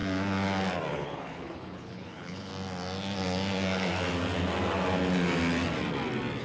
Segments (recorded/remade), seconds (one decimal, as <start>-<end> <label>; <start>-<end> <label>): 0.0-0.9 recorded; 0.9-2.5 remade; 2.5-6.4 recorded